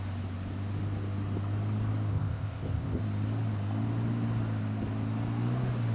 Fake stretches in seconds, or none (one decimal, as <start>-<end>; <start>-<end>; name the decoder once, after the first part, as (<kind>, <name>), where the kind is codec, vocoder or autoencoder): 2.1-3.0 (codec, ZipCodec)